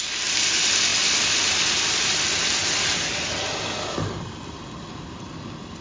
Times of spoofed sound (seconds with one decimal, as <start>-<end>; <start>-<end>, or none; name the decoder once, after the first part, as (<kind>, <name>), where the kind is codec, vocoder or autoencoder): 0.9-3.3 (vocoder, BigVGAN v2)

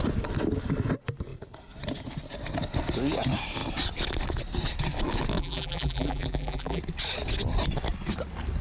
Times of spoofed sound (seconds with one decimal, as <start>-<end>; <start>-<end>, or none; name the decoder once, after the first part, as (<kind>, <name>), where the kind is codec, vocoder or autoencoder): 5.4-6.8 (vocoder, BigVGAN v2)

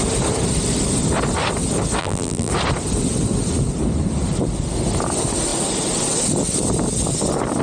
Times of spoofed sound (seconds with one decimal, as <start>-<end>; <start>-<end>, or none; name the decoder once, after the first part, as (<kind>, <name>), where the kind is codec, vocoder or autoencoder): 2.0-2.5 (vocoder, BigVGAN v2)